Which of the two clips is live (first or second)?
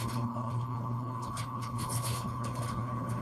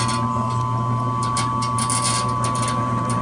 second